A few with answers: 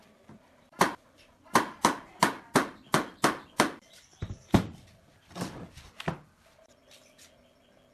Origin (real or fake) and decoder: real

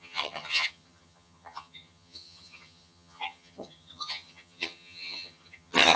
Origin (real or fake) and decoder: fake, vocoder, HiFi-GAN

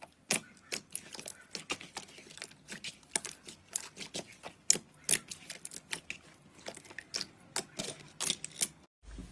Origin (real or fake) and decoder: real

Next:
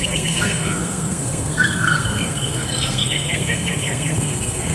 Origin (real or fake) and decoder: fake, codec, SNAC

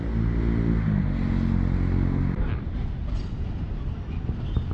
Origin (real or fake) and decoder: real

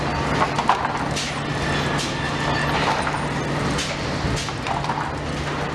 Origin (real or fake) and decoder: real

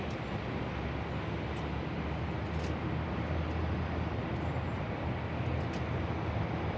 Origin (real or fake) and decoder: real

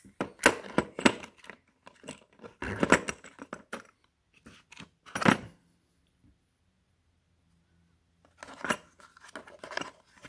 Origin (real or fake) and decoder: real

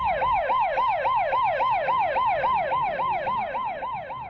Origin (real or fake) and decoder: real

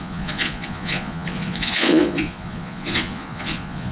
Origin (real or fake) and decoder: fake, vocoder, Vocos